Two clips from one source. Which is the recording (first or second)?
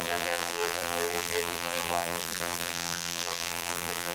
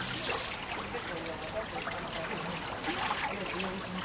second